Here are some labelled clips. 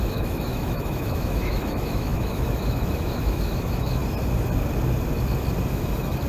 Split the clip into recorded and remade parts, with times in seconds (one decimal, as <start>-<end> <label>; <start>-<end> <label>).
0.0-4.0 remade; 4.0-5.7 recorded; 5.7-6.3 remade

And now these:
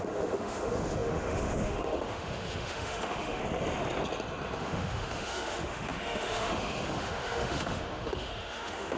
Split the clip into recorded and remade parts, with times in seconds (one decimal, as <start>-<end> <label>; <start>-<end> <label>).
0.0-3.4 remade; 3.4-4.6 recorded; 4.6-9.0 remade

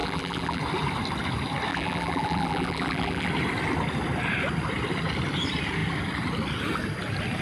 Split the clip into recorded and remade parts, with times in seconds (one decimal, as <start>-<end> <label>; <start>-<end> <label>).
0.0-0.6 remade; 0.6-1.7 recorded; 1.7-3.3 remade; 3.3-7.4 recorded

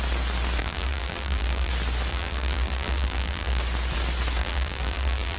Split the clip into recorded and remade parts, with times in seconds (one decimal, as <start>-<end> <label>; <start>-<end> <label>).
0.0-0.6 recorded; 0.6-1.7 remade; 1.7-2.1 recorded; 2.1-3.6 remade; 3.6-4.4 recorded; 4.4-5.4 remade

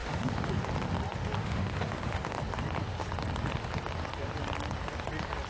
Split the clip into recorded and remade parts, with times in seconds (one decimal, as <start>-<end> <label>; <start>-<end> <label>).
0.0-0.5 remade; 0.5-1.4 recorded; 1.4-2.4 remade; 2.4-5.5 recorded